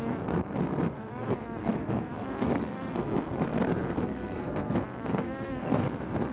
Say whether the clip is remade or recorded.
remade